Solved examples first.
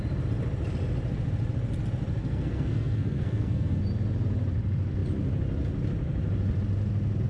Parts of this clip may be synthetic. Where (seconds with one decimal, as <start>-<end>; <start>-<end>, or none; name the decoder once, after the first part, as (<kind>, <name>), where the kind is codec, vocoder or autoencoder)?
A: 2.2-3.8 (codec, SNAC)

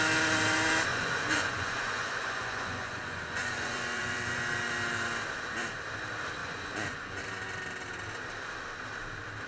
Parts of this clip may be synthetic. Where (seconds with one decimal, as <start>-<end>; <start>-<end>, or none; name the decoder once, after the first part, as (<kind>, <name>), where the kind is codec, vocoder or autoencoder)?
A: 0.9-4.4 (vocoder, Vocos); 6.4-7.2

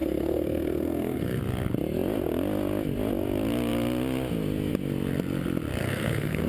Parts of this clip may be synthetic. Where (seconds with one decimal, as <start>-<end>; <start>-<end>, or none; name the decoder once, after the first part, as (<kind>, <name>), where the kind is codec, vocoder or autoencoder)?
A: 0.0-1.4 (codec, SNAC); 5.8-6.5

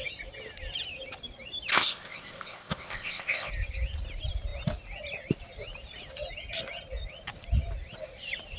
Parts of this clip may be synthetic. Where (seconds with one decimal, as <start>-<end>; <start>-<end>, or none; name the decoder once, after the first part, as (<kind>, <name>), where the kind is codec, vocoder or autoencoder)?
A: 1.7-3.5 (codec, ZipCodec)